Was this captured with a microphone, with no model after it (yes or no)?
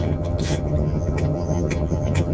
no